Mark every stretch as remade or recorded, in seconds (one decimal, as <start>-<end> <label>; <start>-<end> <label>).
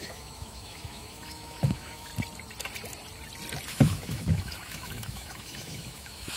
0.0-2.1 remade; 2.1-3.7 recorded; 3.7-6.4 remade